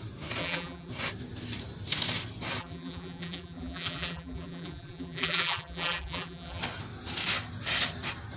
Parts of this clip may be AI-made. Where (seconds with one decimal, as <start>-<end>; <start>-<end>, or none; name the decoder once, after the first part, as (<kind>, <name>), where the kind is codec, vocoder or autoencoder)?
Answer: 0.4-0.9 (vocoder, BigVGAN v2); 2.6-6.6